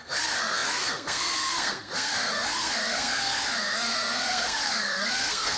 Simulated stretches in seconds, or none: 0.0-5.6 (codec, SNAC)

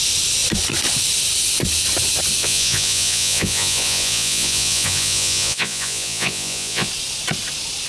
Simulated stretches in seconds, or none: 2.4-6.9 (vocoder, Vocos)

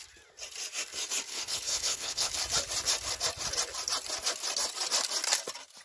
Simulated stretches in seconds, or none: 1.3-2.3 (codec, HILCodec)

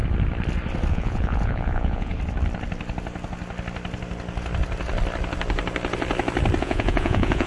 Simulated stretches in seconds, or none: 0.9-2.1 (vocoder, Vocos); 6.6-7.5

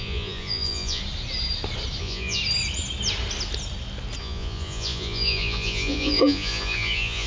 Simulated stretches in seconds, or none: 0.0-1.0 (vocoder, Vocos); 2.0-2.4; 4.2-7.3

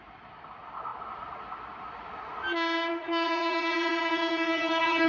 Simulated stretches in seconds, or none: 2.9-5.1 (vocoder, Vocos)